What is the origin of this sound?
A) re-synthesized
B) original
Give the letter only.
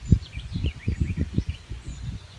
A